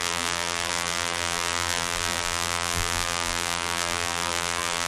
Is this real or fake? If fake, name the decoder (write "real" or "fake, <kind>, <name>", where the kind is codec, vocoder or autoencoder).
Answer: fake, vocoder, BigVGAN v2